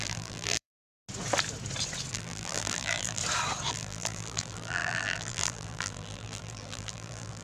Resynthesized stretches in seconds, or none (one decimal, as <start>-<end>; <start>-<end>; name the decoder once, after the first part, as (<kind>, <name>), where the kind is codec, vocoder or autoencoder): 0.0-1.0 (vocoder, BigVGAN v2); 2.1-3.2; 3.7-7.4